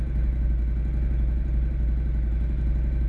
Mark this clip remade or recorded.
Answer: recorded